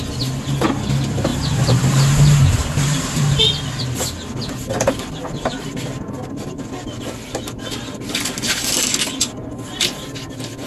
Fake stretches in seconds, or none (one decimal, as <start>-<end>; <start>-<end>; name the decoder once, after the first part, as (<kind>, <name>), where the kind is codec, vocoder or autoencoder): 1.3-3.4 (vocoder, BigVGAN v2)